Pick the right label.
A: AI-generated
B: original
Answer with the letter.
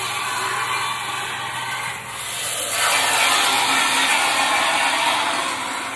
B